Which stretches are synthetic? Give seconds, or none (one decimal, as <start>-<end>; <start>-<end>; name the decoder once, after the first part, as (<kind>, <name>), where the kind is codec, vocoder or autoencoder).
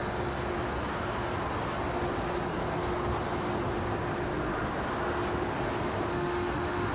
6.1-6.9 (autoencoder, DAC-VAE)